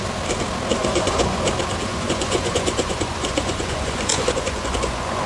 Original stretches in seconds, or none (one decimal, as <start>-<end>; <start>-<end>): 0.0-0.8; 1.5-1.9

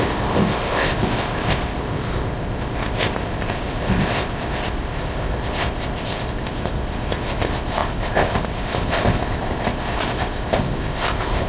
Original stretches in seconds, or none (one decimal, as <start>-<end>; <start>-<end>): none

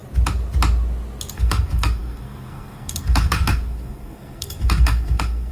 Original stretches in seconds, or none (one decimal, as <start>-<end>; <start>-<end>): 0.0-1.3

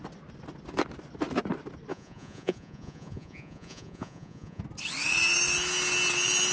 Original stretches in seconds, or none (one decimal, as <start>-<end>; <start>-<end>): 0.0-1.9; 4.6-6.5

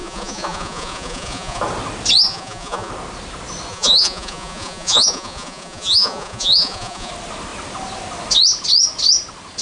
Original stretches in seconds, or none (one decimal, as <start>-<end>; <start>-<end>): 1.6-2.3; 2.9-3.7; 7.1-9.6

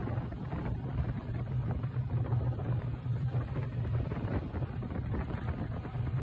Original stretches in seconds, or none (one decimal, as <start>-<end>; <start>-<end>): none

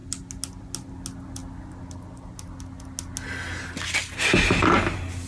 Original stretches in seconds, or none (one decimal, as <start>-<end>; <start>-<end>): 0.0-5.3